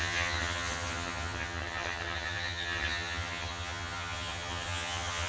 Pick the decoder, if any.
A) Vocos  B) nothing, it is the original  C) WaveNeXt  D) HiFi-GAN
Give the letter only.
D